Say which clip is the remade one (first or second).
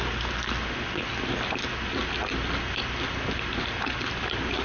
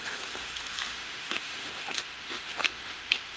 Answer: second